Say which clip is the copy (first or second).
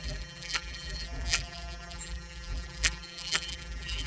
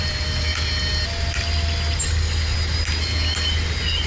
first